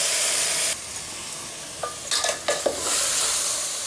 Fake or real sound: real